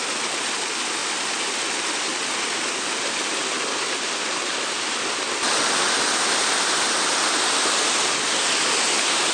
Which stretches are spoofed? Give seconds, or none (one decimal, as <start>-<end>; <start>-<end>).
none